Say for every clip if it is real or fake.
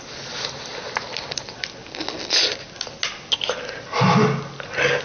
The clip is real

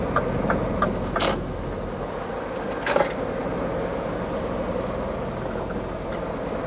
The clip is real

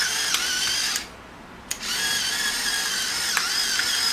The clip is fake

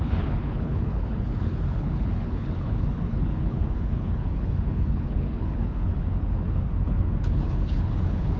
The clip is fake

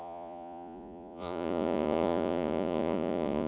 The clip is fake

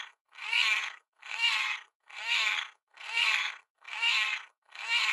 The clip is fake